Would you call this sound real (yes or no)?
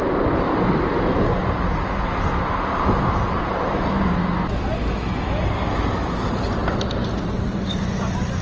yes